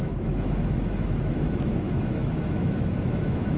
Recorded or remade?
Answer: remade